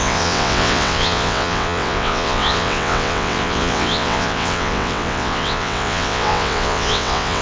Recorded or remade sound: remade